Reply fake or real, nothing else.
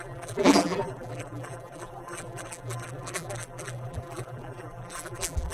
fake